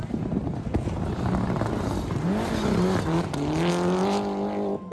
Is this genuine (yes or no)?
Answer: yes